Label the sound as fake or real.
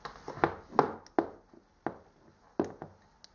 real